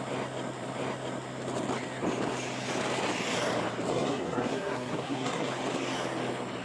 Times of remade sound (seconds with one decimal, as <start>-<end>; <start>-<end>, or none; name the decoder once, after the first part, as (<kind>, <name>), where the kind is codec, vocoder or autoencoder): 3.9-5.5 (codec, SNAC)